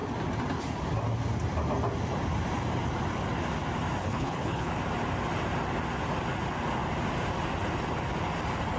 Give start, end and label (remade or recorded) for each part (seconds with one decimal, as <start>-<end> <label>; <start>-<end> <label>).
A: 0.0-4.0 recorded; 4.0-4.7 remade; 4.7-8.8 recorded